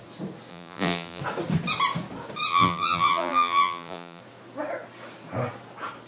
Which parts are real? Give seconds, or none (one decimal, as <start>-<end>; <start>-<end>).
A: 0.0-0.5; 1.2-2.5; 4.2-6.1